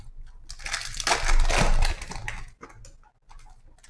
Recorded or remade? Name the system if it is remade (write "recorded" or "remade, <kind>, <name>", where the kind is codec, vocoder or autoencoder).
recorded